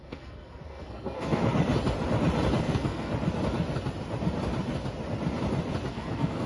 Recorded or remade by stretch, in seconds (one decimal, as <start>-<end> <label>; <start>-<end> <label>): 0.0-1.4 remade; 1.4-2.6 recorded; 2.6-3.1 remade; 3.1-5.9 recorded; 5.9-6.5 remade